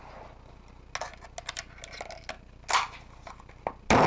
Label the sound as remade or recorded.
recorded